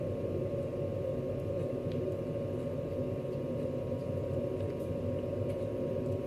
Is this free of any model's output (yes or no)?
no